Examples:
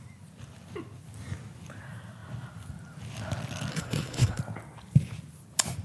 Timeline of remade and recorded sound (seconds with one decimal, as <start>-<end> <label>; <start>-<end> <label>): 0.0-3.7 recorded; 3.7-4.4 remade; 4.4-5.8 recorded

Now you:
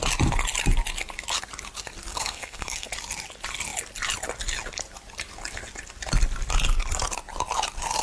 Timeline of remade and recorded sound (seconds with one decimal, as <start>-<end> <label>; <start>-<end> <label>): 0.0-2.1 recorded; 2.1-2.9 remade; 2.9-8.0 recorded

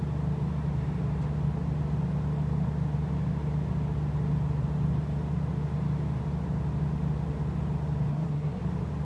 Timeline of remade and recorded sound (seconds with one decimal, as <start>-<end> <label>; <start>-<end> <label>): 0.0-8.1 recorded; 8.1-8.6 remade; 8.6-9.0 recorded

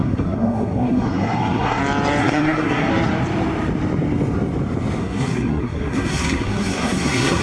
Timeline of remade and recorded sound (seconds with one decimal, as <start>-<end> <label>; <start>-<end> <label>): 0.0-1.8 remade; 1.8-2.2 recorded; 2.2-2.9 remade; 2.9-5.0 recorded; 5.0-7.4 remade

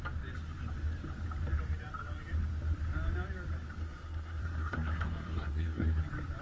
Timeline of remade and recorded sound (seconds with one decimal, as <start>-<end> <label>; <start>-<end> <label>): 0.0-3.8 recorded; 3.8-6.0 remade; 6.0-6.4 recorded

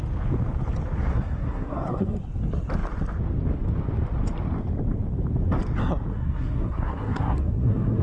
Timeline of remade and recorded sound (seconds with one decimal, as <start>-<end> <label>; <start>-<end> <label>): 0.0-1.1 recorded; 1.1-2.2 remade; 2.2-6.1 recorded; 6.1-8.0 remade